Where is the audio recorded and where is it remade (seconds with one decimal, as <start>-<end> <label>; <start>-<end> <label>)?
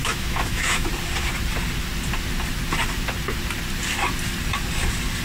0.0-0.9 remade; 0.9-5.2 recorded